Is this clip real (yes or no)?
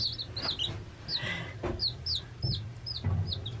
yes